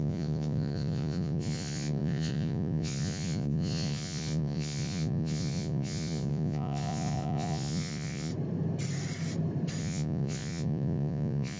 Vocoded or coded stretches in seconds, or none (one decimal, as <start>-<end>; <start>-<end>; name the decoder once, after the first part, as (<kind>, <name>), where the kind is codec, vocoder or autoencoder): 0.0-8.3 (vocoder, Vocos); 9.8-11.6